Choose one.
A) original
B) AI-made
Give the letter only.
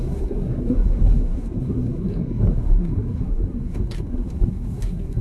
B